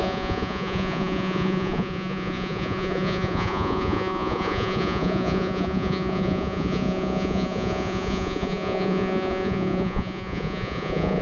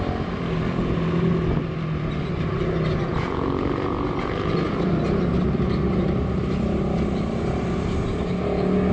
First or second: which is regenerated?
first